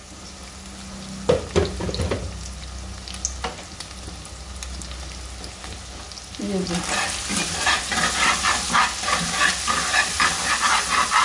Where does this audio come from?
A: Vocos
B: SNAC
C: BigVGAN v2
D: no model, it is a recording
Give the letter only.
D